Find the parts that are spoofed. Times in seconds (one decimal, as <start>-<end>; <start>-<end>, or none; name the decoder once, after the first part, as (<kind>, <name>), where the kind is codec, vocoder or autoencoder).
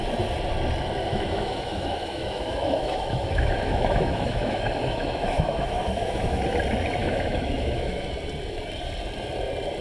1.1-6.4 (autoencoder, DAC-VAE); 7.0-8.1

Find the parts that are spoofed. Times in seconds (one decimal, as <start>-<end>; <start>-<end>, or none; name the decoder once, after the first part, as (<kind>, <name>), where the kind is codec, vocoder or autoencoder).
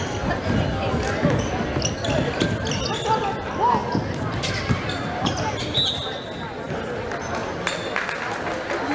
none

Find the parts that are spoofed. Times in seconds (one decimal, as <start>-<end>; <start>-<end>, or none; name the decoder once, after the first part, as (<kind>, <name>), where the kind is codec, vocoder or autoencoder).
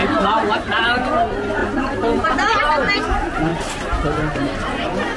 none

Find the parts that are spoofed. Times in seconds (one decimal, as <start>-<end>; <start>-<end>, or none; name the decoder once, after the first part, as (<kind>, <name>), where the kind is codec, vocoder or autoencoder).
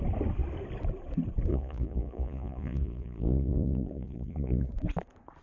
1.5-4.7 (vocoder, Vocos)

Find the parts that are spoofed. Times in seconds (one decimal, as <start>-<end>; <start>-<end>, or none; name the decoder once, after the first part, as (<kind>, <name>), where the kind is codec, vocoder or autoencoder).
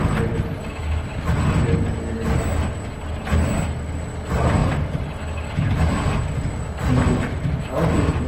4.6-5.2 (vocoder, BigVGAN v2)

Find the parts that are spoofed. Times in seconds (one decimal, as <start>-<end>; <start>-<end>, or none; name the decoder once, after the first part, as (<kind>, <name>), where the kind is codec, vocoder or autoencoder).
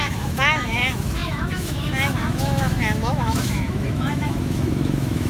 0.0-5.3 (autoencoder, DAC-VAE)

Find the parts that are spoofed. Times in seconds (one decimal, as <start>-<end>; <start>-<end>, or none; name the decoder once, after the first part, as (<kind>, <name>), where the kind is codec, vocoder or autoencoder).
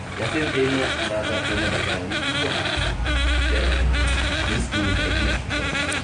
none